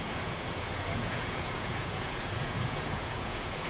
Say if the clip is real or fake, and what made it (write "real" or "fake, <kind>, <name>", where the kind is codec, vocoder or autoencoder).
fake, vocoder, Vocos